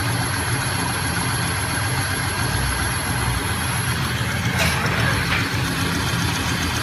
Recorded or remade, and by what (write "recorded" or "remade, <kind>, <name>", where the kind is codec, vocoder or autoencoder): recorded